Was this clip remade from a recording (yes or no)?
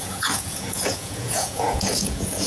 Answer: yes